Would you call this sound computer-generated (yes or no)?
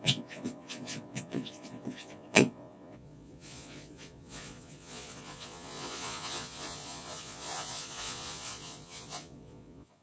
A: yes